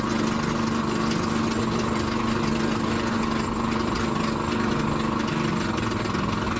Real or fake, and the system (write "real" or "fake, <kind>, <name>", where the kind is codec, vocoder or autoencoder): real